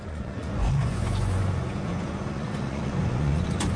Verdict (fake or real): fake